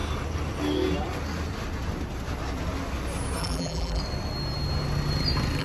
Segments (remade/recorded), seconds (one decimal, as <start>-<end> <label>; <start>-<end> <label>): 0.0-3.4 recorded; 3.4-4.0 remade; 4.0-5.6 recorded